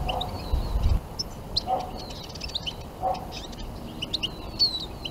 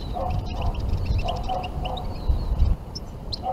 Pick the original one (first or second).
first